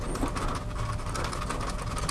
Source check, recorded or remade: recorded